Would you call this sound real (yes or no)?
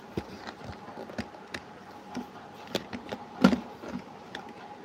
yes